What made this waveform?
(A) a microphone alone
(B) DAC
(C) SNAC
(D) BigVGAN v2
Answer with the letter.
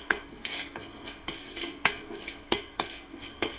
C